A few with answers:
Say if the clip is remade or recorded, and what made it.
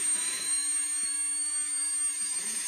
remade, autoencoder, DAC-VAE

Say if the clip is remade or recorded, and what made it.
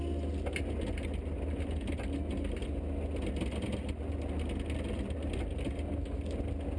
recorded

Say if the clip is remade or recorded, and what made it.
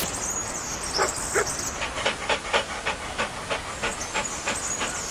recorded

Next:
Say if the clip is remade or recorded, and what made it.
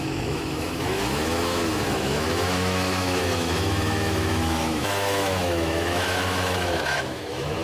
remade, autoencoder, DAC-VAE